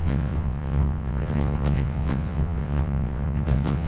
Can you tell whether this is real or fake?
fake